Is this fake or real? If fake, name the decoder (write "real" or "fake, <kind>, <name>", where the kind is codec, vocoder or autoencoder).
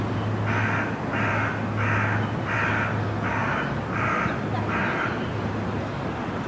real